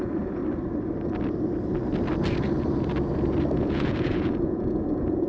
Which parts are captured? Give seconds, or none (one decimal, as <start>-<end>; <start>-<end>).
0.4-3.6

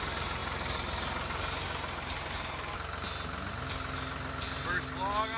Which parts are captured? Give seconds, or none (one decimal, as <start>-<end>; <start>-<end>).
0.0-5.4